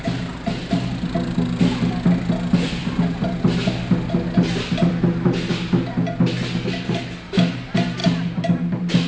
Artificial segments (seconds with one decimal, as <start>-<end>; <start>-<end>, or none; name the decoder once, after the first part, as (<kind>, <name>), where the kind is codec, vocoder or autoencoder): none